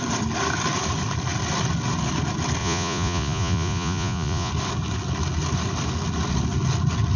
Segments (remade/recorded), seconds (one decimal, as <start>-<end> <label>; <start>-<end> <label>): 0.0-2.6 recorded; 2.6-4.5 remade; 4.5-7.2 recorded